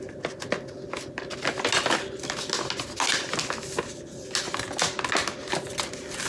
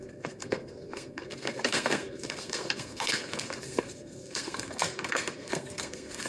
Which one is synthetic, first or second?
second